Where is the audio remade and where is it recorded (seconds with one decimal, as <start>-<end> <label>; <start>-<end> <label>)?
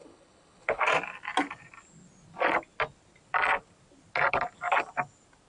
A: 0.0-0.8 remade; 0.8-5.5 recorded